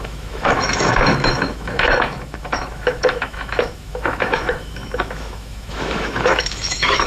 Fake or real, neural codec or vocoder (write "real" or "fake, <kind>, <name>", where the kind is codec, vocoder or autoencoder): fake, autoencoder, DAC-VAE